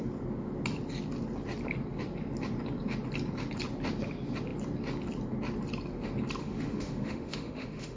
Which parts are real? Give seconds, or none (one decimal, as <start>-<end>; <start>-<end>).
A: 0.0-6.4